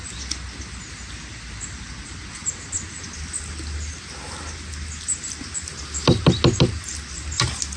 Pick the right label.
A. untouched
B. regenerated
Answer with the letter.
A